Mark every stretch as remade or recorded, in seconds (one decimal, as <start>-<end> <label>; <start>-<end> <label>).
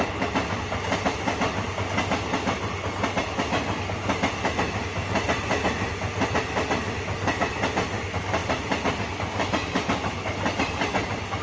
0.0-11.4 recorded